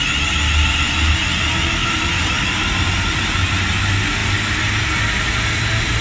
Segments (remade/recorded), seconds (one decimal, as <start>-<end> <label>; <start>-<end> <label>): 0.0-6.0 recorded